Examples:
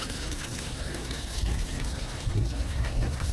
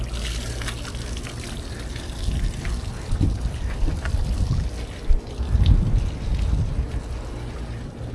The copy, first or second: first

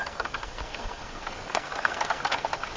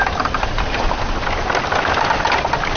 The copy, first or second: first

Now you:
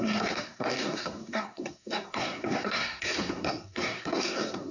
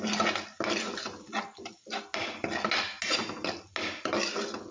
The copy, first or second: first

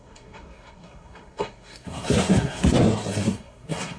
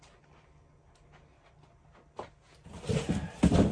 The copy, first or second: first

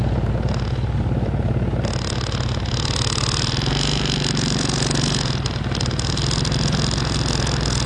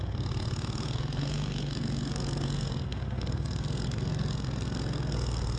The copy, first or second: second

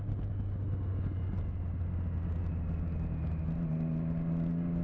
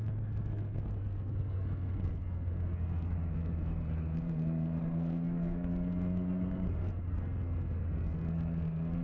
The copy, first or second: second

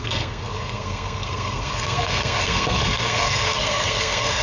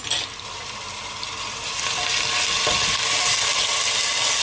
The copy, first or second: first